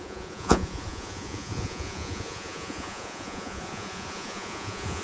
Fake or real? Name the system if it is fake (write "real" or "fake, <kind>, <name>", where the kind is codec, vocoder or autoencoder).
fake, vocoder, Vocos